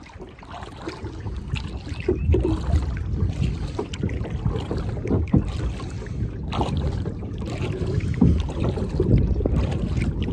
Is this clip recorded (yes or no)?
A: yes